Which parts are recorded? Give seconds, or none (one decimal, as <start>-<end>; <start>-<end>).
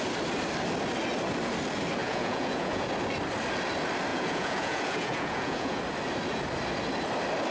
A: 0.0-2.0; 2.9-4.1; 5.8-7.5